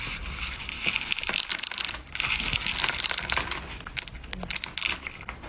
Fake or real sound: real